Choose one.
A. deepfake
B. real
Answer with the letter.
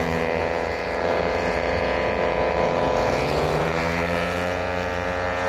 A